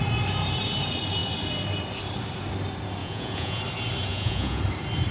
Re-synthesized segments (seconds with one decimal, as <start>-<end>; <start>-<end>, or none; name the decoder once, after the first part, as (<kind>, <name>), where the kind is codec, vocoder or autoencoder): 3.0-3.6 (vocoder, Vocos); 4.1-4.6